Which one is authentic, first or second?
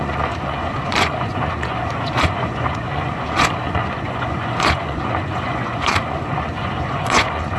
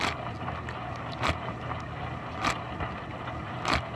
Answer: second